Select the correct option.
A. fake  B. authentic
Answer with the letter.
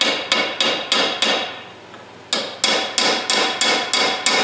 B